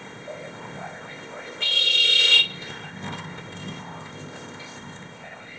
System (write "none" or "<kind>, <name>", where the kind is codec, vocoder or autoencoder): codec, ZipCodec